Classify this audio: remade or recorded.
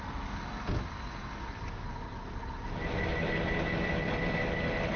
recorded